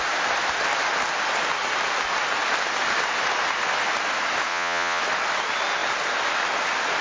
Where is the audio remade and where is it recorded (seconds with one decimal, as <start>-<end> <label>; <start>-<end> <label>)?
0.0-4.5 recorded; 4.5-5.0 remade; 5.0-7.0 recorded